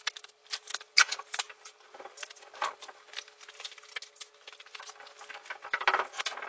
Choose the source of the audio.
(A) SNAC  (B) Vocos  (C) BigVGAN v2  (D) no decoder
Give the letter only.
D